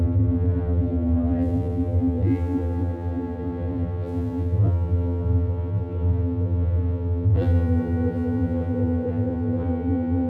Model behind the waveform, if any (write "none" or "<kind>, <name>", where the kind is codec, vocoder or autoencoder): vocoder, BigVGAN v2